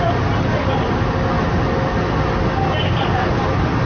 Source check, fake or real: real